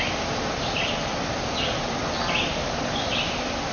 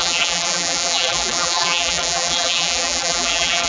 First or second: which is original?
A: first